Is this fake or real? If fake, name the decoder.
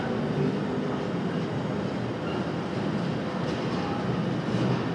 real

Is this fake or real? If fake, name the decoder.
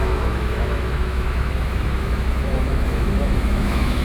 fake, autoencoder, DAC-VAE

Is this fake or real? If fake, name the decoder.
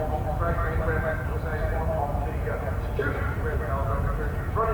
real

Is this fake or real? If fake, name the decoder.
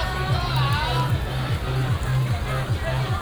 real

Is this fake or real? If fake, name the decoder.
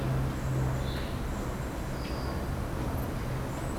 real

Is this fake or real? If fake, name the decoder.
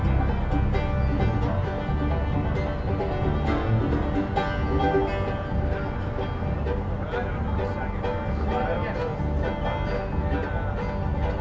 real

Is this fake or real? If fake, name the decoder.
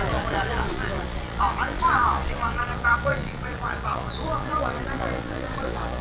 fake, vocoder, Vocos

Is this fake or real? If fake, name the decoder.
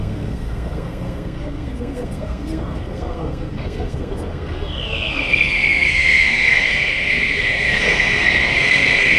fake, codec, SNAC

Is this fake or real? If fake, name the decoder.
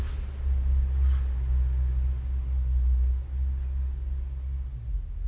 real